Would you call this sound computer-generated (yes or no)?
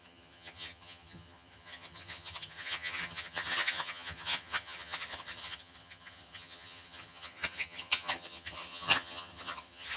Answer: yes